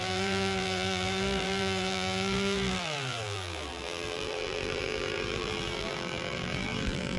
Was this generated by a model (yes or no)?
yes